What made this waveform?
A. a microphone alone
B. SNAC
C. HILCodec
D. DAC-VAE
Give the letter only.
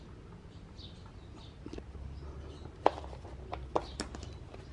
A